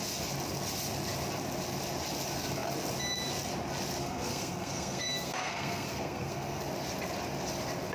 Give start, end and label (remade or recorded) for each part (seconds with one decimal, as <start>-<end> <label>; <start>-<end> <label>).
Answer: 0.0-4.0 recorded; 4.0-6.6 remade; 6.6-7.9 recorded